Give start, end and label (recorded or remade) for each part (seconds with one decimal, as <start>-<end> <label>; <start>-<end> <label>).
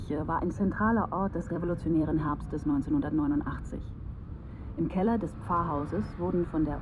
0.0-5.8 remade; 5.8-6.3 recorded; 6.3-6.8 remade